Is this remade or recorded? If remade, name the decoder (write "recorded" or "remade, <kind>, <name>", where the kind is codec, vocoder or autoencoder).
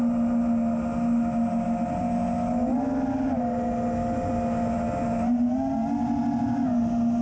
recorded